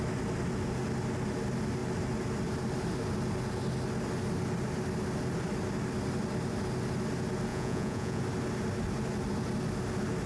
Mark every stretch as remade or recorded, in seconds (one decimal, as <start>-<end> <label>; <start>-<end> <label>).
0.0-7.5 recorded; 7.5-8.2 remade; 8.2-10.3 recorded